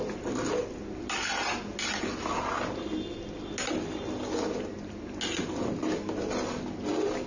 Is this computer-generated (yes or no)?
no